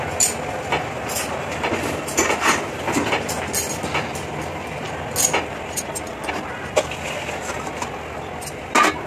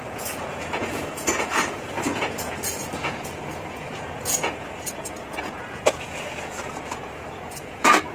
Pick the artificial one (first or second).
second